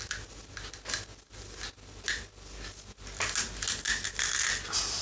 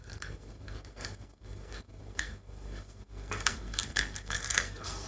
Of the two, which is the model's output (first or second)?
second